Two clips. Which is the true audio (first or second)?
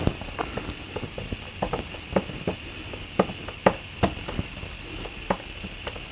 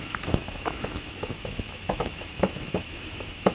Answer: first